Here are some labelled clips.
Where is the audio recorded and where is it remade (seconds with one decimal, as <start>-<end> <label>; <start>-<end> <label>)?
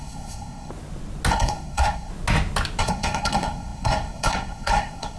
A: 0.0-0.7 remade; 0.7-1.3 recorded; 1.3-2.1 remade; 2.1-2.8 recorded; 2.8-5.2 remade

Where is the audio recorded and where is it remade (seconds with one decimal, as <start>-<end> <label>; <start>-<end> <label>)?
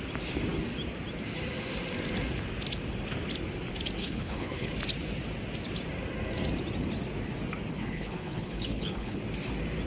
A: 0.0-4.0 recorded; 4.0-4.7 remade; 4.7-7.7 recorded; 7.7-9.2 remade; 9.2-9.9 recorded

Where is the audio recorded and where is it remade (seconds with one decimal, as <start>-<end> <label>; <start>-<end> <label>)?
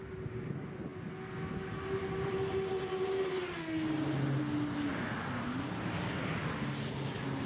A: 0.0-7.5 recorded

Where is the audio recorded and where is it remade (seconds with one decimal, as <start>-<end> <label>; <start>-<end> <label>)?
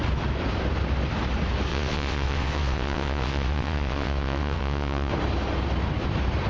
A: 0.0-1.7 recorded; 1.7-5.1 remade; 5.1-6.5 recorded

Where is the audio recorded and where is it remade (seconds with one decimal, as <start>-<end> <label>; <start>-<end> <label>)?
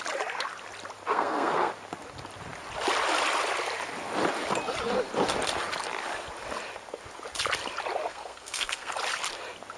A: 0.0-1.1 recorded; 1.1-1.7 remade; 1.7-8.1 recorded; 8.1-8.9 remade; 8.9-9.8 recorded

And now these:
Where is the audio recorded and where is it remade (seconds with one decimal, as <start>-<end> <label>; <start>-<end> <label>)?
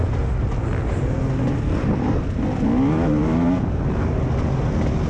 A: 0.0-5.1 recorded